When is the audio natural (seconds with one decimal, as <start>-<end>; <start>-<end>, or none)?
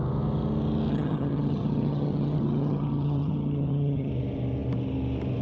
0.0-0.9; 4.1-5.4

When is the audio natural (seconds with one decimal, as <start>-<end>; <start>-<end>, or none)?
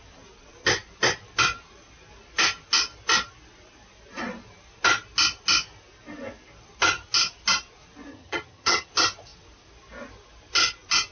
0.0-8.1; 8.9-11.1